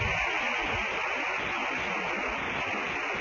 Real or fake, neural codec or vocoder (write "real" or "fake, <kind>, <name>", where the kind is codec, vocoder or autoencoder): real